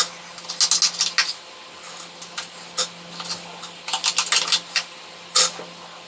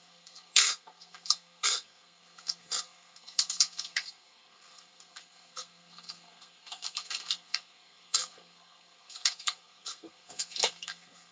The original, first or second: first